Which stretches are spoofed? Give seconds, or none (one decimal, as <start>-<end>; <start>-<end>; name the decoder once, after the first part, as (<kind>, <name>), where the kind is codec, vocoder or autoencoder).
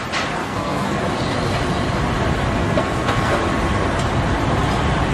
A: 0.4-1.0 (codec, SNAC); 2.6-3.4